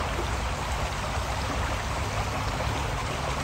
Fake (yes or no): no